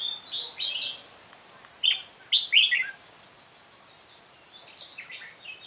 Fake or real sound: real